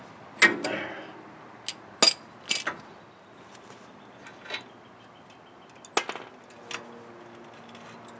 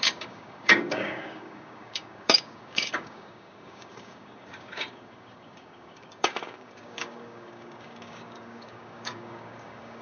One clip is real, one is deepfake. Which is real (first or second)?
first